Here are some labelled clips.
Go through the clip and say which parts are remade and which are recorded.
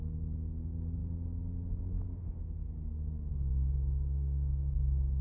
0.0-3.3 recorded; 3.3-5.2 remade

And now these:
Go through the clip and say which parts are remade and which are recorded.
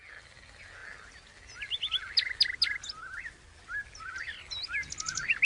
0.0-5.4 recorded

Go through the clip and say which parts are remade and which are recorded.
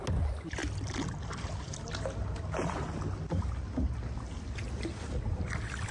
0.0-0.6 recorded; 0.6-1.9 remade; 1.9-5.9 recorded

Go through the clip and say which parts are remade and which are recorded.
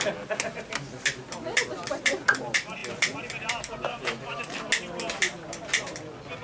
0.0-3.9 recorded; 3.9-4.4 remade; 4.4-6.4 recorded